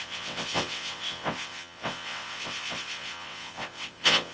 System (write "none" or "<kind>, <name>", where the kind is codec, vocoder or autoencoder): vocoder, WaveNeXt